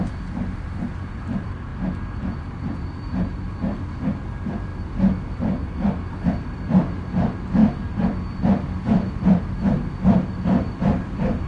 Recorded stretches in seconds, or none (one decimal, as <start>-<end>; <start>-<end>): 1.7-2.4; 4.7-5.4